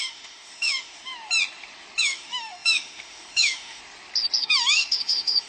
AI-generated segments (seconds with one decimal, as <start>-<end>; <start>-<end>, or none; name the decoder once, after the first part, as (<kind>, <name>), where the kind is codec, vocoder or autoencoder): 0.0-1.1 (autoencoder, DAC-VAE); 2.0-3.8; 4.4-5.5